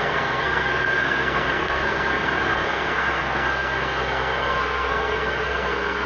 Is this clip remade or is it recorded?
remade